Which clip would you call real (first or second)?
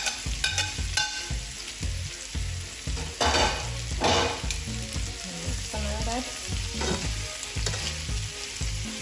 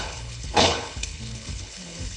first